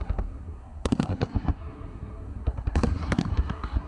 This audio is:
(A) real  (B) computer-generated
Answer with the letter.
B